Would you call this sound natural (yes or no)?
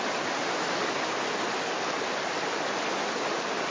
yes